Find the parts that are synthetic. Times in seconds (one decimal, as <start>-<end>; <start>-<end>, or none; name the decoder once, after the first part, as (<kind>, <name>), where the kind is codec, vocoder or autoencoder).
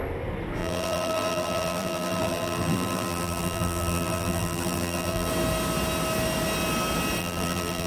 0.6-5.3 (vocoder, BigVGAN v2); 7.2-7.9